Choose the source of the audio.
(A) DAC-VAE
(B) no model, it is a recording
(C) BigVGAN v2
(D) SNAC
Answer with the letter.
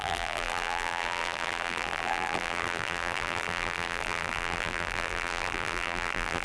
C